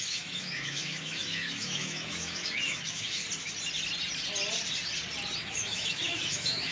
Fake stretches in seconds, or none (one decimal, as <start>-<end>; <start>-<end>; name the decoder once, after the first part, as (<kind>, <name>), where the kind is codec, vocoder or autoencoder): 0.0-3.2 (autoencoder, DAC-VAE); 5.4-6.7